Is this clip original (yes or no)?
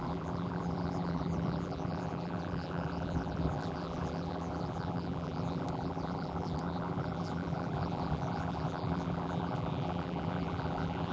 no